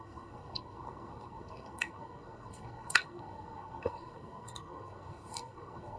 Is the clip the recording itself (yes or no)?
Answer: no